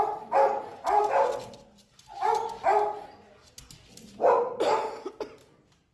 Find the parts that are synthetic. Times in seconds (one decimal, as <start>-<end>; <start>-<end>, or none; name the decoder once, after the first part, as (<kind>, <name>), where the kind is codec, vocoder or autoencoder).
none